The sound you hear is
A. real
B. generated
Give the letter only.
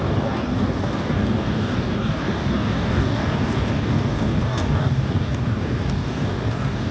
B